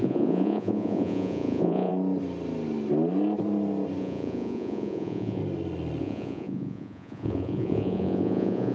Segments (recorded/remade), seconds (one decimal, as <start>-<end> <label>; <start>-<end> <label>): 0.0-1.9 remade; 1.9-4.0 recorded; 4.0-5.4 remade; 5.4-6.0 recorded; 6.0-8.7 remade